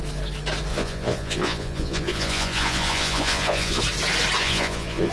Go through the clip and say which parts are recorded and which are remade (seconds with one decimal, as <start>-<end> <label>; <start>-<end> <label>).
0.0-0.7 recorded; 0.7-3.8 remade; 3.8-4.4 recorded; 4.4-5.1 remade